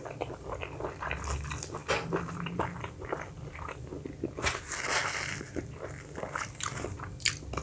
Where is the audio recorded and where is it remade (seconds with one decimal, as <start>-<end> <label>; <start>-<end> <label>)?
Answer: 0.0-7.6 recorded